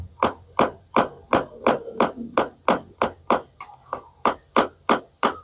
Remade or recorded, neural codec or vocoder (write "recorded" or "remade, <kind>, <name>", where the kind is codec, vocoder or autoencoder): recorded